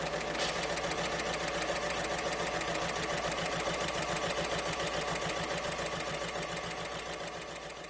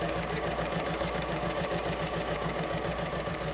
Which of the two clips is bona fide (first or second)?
first